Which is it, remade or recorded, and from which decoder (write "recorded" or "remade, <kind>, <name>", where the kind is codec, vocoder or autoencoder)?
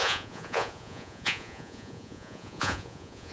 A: remade, vocoder, Vocos